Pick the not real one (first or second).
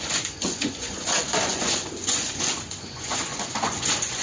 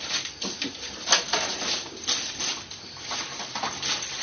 first